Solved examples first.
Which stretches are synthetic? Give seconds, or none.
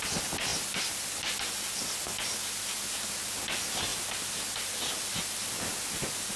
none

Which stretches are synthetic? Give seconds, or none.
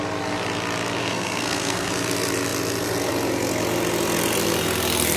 1.0-1.9 (codec, SNAC)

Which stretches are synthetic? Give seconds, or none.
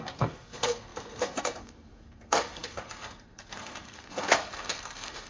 0.0-5.3 (codec, SNAC)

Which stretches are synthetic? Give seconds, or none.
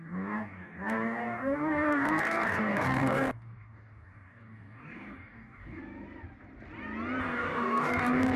0.0-5.8 (codec, DAC); 7.2-8.4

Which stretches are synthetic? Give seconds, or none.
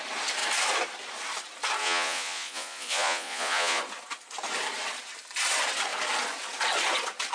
1.8-3.8 (vocoder, Vocos)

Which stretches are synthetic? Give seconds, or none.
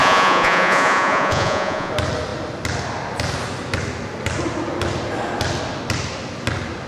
0.0-1.9 (vocoder, Vocos)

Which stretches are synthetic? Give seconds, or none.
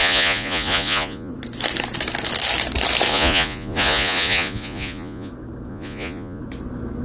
0.0-1.3 (vocoder, Vocos); 3.1-5.3; 5.7-6.4